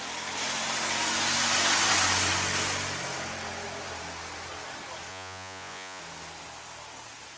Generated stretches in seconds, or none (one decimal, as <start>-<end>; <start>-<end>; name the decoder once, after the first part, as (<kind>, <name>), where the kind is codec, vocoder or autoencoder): 5.1-6.0 (vocoder, Vocos)